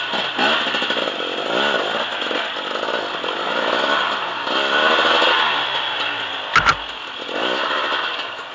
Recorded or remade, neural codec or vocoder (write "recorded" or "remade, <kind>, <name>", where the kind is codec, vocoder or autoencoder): recorded